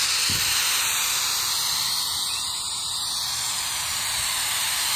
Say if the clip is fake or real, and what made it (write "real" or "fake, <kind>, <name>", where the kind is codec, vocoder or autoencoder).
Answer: real